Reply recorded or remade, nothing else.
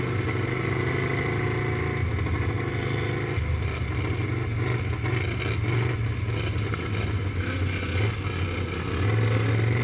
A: recorded